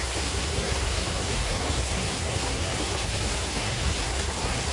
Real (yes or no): no